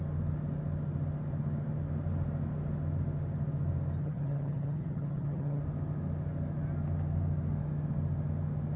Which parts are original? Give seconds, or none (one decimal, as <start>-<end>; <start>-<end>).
0.0-4.0; 5.6-8.8